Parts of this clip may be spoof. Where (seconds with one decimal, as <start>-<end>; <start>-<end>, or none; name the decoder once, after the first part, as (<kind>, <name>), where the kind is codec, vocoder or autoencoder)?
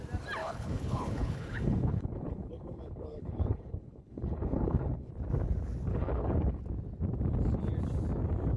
0.4-5.1 (codec, HILCodec); 5.9-6.6